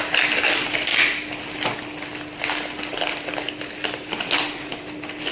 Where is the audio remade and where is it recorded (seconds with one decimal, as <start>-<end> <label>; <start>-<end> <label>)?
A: 0.0-5.3 recorded